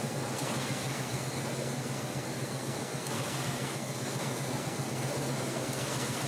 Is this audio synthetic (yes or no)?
yes